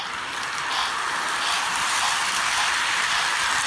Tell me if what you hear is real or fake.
real